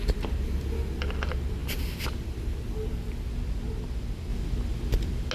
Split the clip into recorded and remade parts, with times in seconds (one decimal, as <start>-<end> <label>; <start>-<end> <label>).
0.0-5.3 recorded

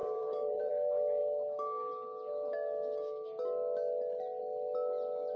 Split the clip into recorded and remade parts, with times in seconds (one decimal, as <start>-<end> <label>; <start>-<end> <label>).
0.0-0.7 remade; 0.7-5.4 recorded

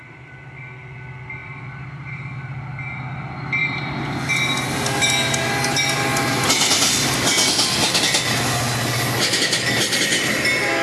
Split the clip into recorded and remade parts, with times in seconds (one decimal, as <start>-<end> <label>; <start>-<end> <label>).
0.0-0.6 remade; 0.6-1.4 recorded; 1.4-2.7 remade; 2.7-3.6 recorded; 3.6-4.4 remade; 4.4-10.8 recorded

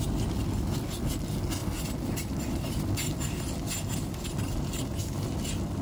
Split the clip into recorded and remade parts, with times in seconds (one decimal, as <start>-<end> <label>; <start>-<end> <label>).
0.0-5.8 recorded

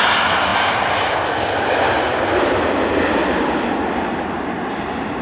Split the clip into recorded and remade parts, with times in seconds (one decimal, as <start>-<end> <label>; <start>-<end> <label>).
0.0-5.2 recorded

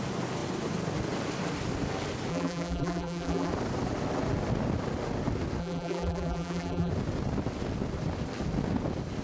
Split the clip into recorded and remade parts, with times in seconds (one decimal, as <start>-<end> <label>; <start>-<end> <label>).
0.0-2.3 recorded; 2.3-3.5 remade; 3.5-5.6 recorded; 5.6-6.9 remade; 6.9-9.2 recorded

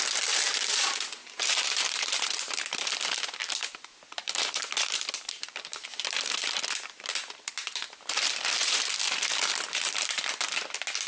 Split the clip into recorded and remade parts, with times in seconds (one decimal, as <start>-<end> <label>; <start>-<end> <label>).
0.0-1.2 recorded; 1.2-2.9 remade; 2.9-3.4 recorded; 3.4-8.2 remade; 8.2-8.6 recorded; 8.6-10.2 remade; 10.2-11.1 recorded